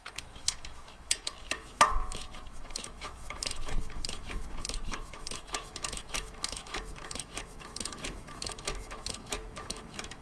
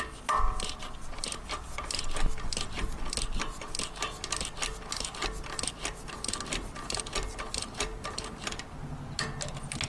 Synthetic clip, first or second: first